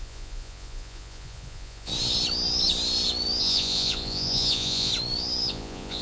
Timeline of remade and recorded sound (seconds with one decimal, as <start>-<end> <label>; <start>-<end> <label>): 0.0-1.9 remade; 1.9-3.4 recorded; 3.4-4.9 remade; 4.9-5.5 recorded; 5.5-6.0 remade